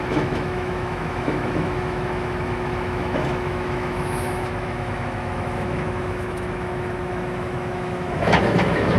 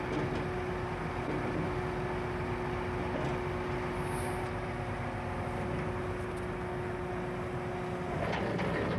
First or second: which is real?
second